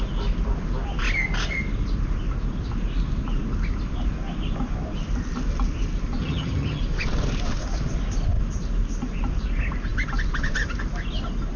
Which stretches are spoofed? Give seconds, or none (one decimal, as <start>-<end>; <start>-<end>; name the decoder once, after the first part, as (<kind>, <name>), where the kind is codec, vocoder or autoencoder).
6.2-6.8 (vocoder, HiFi-GAN)